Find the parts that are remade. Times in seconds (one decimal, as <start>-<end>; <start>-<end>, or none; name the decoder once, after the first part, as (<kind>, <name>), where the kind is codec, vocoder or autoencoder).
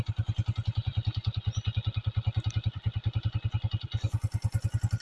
none